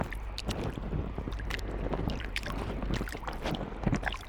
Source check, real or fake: fake